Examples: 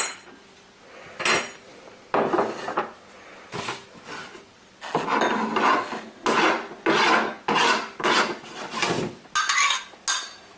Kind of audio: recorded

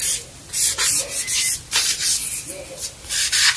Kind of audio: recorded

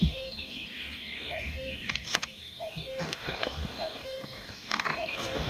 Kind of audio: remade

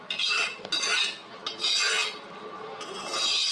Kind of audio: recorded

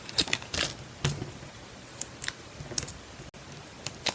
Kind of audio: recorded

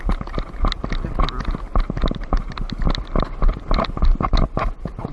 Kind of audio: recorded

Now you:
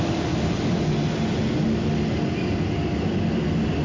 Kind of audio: recorded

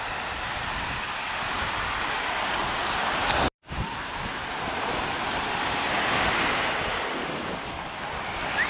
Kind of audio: recorded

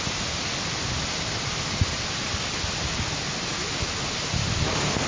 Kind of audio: recorded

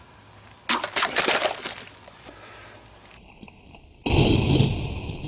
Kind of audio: recorded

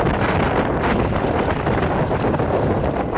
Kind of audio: recorded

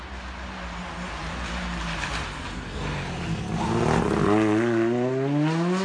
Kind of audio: recorded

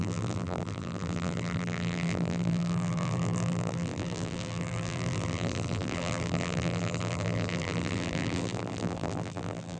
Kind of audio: remade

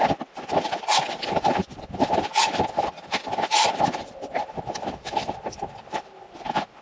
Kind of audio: recorded